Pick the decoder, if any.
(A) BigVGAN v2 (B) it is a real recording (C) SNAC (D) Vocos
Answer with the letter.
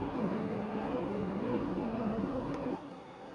C